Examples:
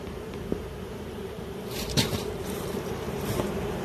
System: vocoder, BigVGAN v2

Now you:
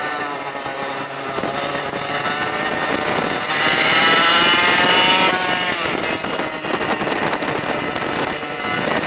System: none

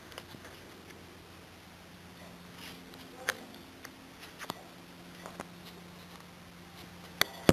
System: none